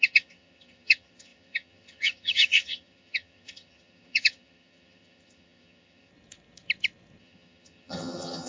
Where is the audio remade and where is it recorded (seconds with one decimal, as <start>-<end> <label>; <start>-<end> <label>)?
0.0-6.1 remade; 6.1-7.2 recorded; 7.2-8.5 remade